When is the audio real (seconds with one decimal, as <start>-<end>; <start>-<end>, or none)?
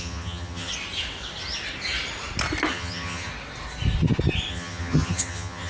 0.7-2.7; 3.3-4.5